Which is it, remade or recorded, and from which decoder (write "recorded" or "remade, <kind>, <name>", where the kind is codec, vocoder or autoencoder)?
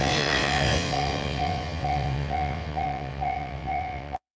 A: remade, vocoder, WaveNeXt